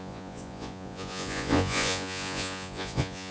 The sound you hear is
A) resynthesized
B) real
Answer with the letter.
A